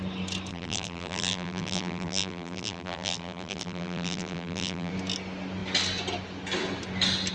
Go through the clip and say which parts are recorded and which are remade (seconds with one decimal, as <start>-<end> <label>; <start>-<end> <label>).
0.0-0.5 recorded; 0.5-4.9 remade; 4.9-7.3 recorded